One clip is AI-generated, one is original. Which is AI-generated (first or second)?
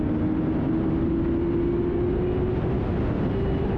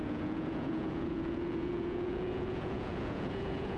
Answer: second